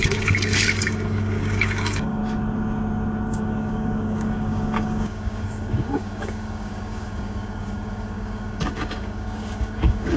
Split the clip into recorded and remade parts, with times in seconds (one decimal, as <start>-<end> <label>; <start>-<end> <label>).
0.0-2.2 remade; 2.2-3.3 recorded; 3.3-10.2 remade